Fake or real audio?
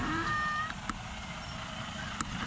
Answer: real